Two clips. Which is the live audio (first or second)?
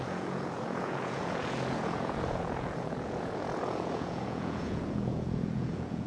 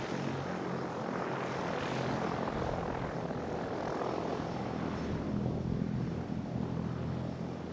second